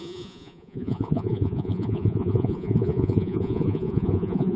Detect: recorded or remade remade